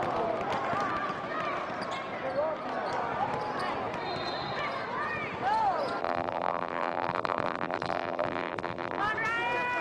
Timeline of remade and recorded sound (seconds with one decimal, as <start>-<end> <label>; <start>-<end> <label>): 0.0-6.0 recorded; 6.0-9.0 remade; 9.0-9.8 recorded